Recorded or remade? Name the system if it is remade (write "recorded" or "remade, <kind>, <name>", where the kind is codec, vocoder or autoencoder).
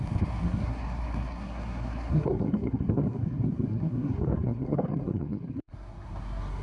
remade, codec, SNAC